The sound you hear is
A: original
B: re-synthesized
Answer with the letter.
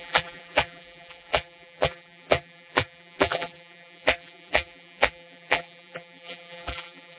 B